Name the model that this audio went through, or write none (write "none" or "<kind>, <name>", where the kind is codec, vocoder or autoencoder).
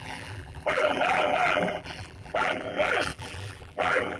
vocoder, BigVGAN v2